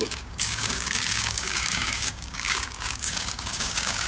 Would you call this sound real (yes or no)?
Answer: no